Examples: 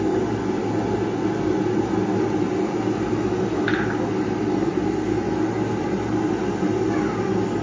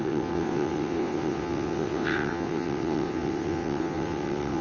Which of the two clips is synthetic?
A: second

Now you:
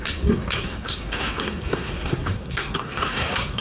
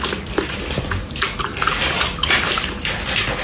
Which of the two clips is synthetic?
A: first